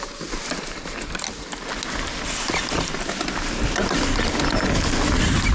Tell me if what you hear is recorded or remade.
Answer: recorded